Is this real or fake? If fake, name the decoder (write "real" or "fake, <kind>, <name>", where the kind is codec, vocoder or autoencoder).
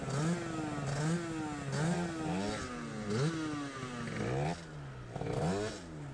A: real